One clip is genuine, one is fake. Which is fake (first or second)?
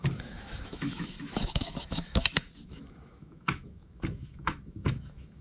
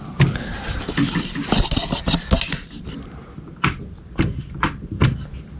first